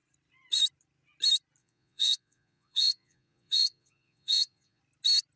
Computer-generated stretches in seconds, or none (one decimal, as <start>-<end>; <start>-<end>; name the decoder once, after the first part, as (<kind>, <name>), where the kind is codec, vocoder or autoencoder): 1.6-4.8 (vocoder, Vocos)